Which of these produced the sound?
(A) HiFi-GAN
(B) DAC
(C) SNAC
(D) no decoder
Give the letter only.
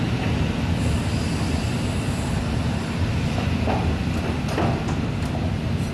D